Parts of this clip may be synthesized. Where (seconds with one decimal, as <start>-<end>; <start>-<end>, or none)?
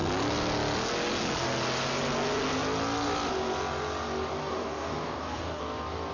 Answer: 4.4-5.6